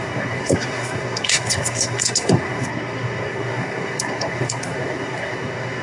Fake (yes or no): yes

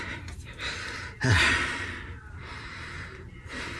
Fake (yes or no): yes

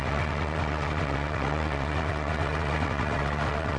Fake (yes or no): yes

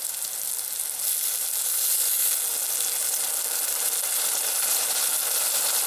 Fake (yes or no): no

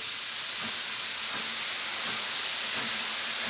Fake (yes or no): no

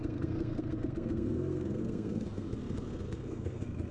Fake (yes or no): yes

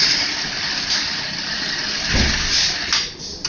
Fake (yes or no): no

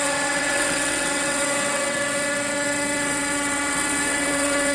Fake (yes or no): yes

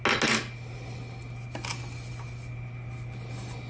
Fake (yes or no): no